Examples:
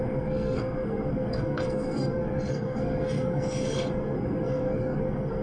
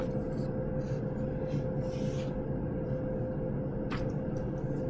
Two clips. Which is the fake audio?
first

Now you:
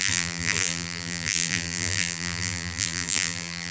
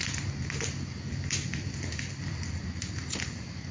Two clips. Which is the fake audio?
first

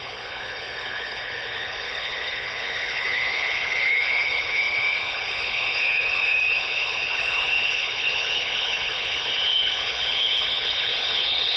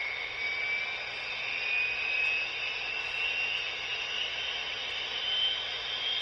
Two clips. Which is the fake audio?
first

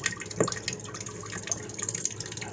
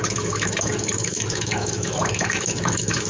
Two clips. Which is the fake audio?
second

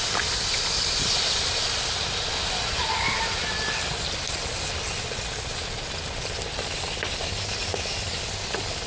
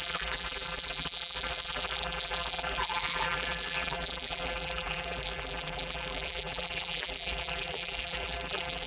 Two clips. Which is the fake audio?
second